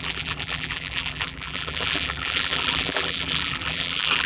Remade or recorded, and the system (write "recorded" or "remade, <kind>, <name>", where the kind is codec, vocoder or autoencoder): remade, vocoder, BigVGAN v2